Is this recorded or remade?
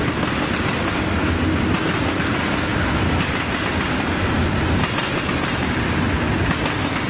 recorded